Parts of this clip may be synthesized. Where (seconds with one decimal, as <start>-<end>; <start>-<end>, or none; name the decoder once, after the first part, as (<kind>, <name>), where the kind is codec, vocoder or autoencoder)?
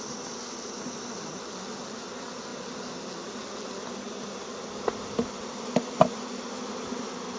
none